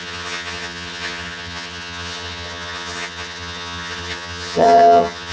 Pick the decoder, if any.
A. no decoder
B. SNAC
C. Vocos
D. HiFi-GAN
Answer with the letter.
D